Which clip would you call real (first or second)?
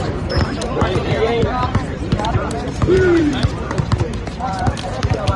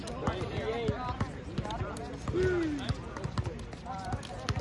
second